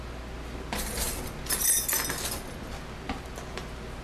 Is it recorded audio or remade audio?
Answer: recorded